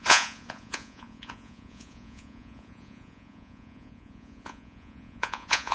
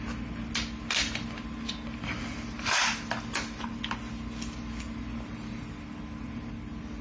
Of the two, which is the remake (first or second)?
first